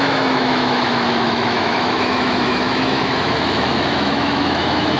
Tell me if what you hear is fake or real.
fake